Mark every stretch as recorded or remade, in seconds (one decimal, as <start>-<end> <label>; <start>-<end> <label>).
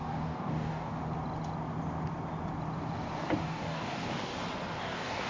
0.0-0.9 remade; 0.9-3.4 recorded; 3.4-4.3 remade; 4.3-4.8 recorded; 4.8-5.3 remade